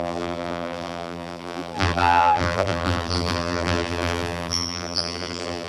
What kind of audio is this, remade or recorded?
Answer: remade